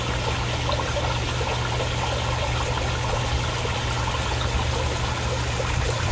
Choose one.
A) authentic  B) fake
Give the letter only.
A